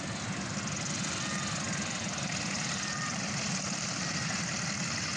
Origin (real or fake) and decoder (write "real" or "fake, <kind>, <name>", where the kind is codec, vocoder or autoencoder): fake, vocoder, BigVGAN v2